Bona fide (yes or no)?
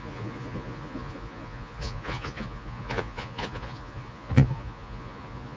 no